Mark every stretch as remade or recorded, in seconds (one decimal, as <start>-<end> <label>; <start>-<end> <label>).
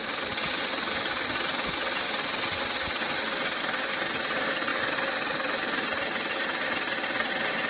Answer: 0.0-7.7 recorded